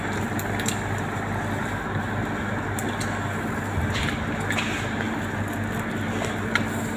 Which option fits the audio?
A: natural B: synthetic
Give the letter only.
A